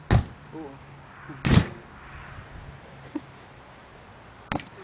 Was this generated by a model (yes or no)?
no